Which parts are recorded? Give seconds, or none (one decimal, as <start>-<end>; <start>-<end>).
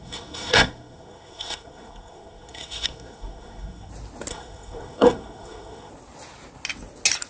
3.9-4.3; 5.9-7.3